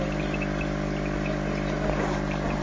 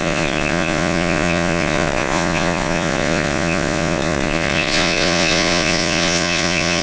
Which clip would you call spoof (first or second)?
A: second